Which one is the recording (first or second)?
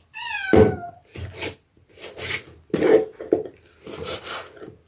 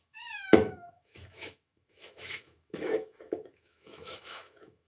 first